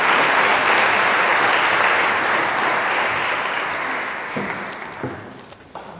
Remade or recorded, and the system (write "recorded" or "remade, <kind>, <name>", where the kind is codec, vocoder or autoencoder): recorded